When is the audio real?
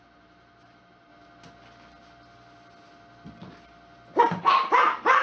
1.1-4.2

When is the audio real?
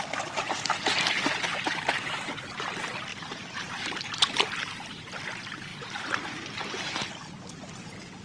0.0-1.5; 2.4-3.1; 5.1-5.7; 6.9-8.2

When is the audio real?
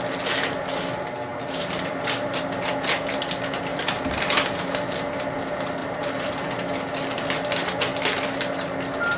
0.0-1.3; 2.4-3.7; 5.2-5.8; 6.5-9.2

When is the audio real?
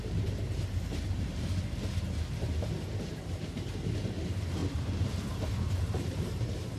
1.3-3.1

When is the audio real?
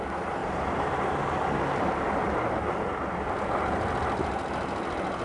0.0-0.4; 1.0-5.2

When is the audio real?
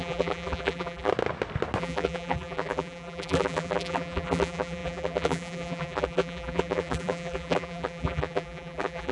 1.1-1.8